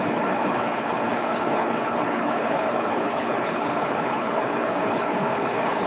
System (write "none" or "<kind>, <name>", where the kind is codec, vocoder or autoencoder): codec, HILCodec